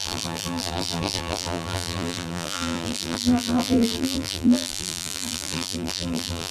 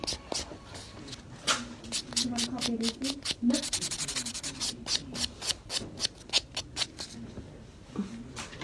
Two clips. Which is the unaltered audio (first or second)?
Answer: second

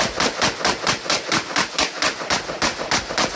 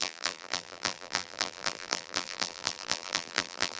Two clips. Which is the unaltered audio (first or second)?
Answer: first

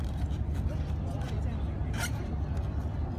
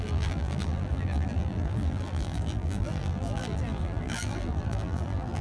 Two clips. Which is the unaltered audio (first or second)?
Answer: first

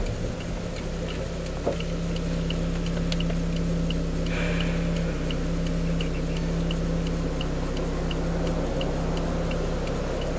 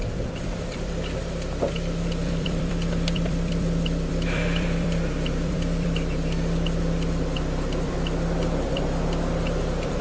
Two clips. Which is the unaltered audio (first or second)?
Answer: first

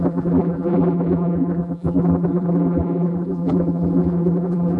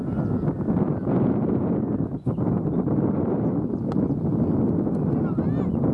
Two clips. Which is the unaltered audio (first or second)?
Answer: second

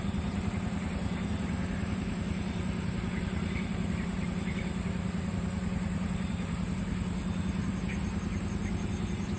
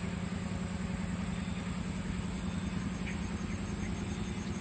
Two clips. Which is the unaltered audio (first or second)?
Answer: second